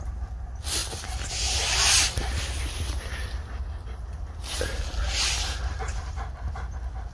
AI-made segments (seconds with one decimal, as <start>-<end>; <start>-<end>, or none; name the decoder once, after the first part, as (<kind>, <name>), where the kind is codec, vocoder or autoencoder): none